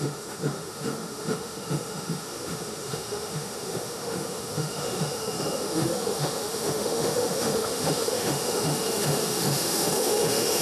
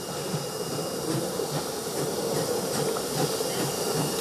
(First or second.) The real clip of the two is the second